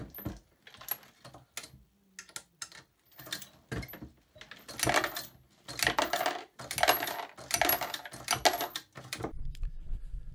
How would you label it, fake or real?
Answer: real